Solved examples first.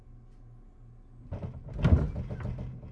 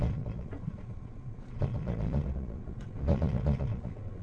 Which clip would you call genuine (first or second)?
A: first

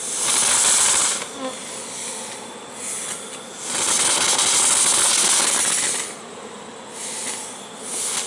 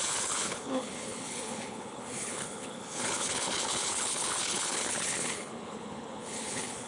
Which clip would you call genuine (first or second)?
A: first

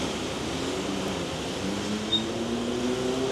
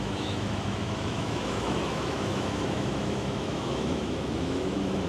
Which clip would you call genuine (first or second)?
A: first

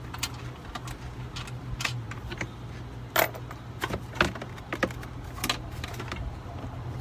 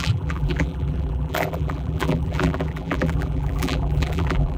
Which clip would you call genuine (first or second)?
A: first